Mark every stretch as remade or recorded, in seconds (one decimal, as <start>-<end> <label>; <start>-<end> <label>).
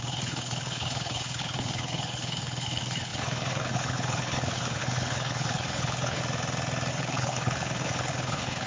0.0-6.2 remade; 6.2-6.9 recorded; 6.9-8.7 remade